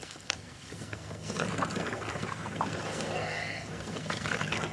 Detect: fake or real fake